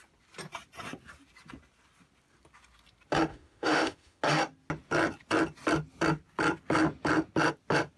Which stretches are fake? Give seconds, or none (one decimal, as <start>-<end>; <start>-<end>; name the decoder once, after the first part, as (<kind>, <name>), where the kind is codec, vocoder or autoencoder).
3.3-4.2 (autoencoder, DAC-VAE)